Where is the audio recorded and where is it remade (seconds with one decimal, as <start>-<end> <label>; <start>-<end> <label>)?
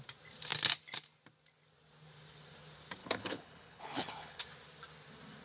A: 0.0-3.0 recorded; 3.0-4.4 remade; 4.4-5.4 recorded